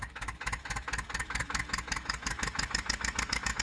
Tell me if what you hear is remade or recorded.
remade